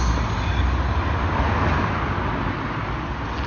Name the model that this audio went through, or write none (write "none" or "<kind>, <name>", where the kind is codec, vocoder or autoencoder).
none